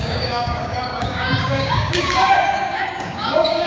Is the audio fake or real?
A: fake